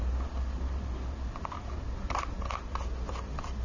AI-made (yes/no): no